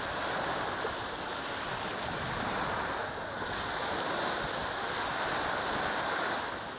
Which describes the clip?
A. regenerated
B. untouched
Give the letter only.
B